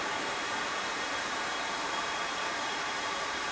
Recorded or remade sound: remade